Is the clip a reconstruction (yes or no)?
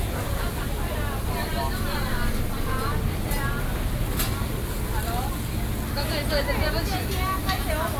no